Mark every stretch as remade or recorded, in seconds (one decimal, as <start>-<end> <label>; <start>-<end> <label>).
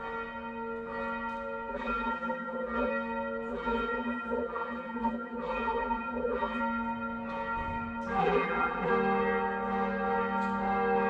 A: 0.0-1.7 recorded; 1.7-2.9 remade; 2.9-3.5 recorded; 3.5-6.6 remade; 6.6-8.2 recorded; 8.2-8.9 remade; 8.9-11.1 recorded